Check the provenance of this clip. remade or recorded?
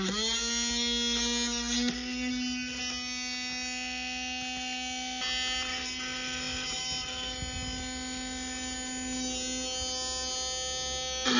recorded